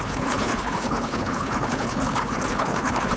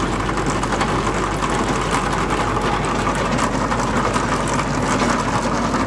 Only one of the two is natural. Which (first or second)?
second